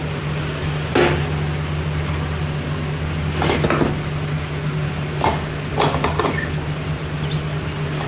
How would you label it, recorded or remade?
recorded